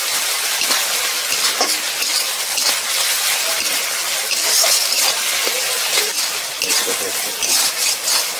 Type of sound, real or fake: real